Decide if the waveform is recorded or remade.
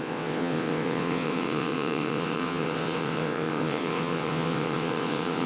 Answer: remade